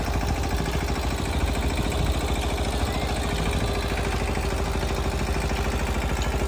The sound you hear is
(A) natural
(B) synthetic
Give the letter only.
A